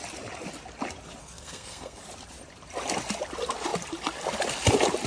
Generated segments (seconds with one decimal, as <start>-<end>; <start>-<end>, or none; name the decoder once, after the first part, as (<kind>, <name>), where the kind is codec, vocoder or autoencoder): 1.2-2.0 (codec, SNAC)